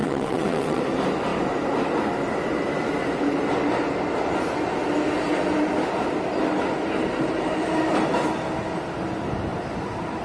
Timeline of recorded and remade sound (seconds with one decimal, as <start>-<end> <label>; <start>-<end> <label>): 0.0-0.8 remade; 0.8-10.2 recorded